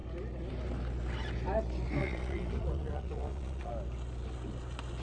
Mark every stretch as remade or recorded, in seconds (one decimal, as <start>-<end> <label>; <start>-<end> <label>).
0.0-2.0 recorded; 2.0-3.7 remade; 3.7-5.0 recorded